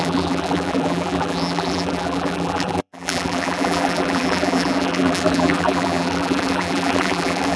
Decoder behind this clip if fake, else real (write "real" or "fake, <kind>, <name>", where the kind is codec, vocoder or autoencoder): fake, vocoder, BigVGAN v2